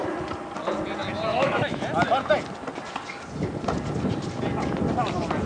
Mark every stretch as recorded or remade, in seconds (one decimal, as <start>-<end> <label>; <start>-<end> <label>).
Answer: 0.0-1.3 recorded; 1.3-1.8 remade; 1.8-5.5 recorded

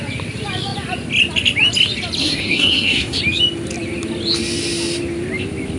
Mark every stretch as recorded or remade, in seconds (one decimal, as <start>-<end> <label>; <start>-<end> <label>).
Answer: 0.0-2.2 recorded; 2.2-3.2 remade; 3.2-5.8 recorded

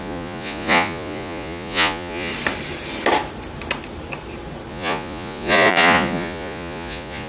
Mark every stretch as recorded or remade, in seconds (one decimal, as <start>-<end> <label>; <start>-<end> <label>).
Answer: 0.0-2.3 remade; 2.3-4.7 recorded; 4.7-7.3 remade

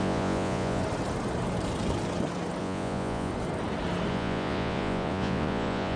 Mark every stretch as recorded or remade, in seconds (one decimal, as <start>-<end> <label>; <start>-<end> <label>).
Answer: 0.0-0.8 remade; 0.8-2.6 recorded; 2.6-3.3 remade; 3.3-4.1 recorded; 4.1-6.0 remade

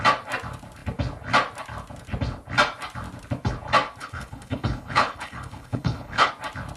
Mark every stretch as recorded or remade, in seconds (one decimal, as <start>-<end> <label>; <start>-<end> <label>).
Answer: 0.0-4.0 recorded; 4.0-6.3 remade; 6.3-6.8 recorded

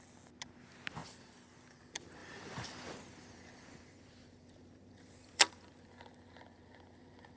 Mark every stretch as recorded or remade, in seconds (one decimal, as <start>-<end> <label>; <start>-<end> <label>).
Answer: 0.0-1.0 recorded; 1.0-1.8 remade; 1.8-2.2 recorded; 2.2-5.7 remade; 5.7-7.4 recorded

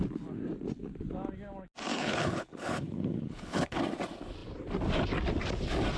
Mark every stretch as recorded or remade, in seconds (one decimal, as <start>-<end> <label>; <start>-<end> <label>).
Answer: 0.0-1.9 recorded; 1.9-3.8 remade; 3.8-6.0 recorded